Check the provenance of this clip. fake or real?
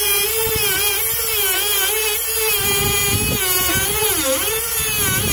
real